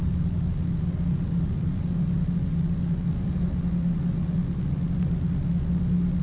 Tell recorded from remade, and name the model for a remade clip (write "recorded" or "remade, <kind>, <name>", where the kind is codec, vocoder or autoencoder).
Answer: recorded